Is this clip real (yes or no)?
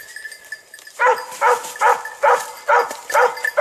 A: yes